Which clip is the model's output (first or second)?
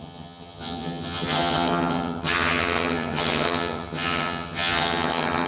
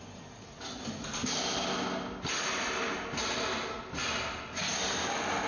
first